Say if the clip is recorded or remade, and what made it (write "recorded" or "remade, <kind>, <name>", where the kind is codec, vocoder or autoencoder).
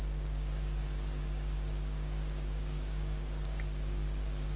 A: remade, codec, DAC